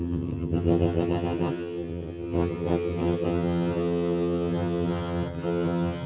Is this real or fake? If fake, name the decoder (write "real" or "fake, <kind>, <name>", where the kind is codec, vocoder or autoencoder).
fake, vocoder, HiFi-GAN